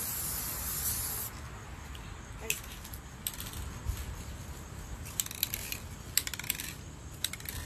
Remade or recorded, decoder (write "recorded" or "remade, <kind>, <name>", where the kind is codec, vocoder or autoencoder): recorded